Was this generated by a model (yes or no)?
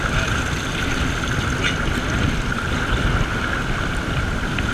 no